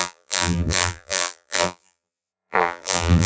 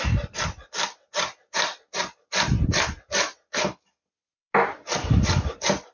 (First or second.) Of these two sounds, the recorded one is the second